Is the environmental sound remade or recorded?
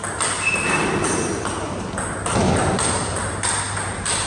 recorded